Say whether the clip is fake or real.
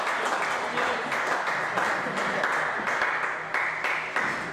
real